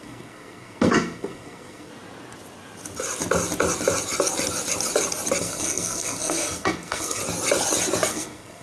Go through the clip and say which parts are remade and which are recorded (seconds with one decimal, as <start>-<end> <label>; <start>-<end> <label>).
0.0-1.9 remade; 1.9-5.4 recorded; 5.4-7.2 remade; 7.2-8.1 recorded; 8.1-8.6 remade

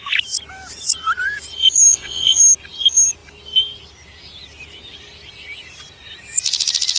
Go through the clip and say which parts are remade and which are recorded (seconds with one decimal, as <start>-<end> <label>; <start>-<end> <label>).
0.0-1.9 recorded; 1.9-2.4 remade; 2.4-7.0 recorded

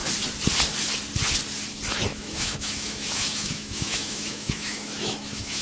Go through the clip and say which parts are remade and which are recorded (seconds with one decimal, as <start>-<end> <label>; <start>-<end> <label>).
0.0-2.1 recorded; 2.1-5.6 remade

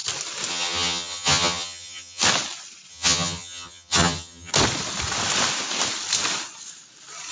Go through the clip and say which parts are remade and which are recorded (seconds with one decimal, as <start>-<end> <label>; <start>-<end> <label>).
0.0-0.5 recorded; 0.5-2.2 remade; 2.2-2.9 recorded; 2.9-4.5 remade; 4.5-7.3 recorded